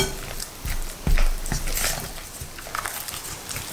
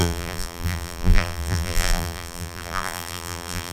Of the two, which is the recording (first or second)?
first